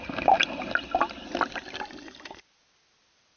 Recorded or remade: recorded